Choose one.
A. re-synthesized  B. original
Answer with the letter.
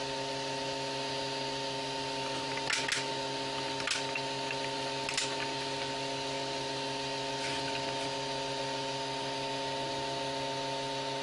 B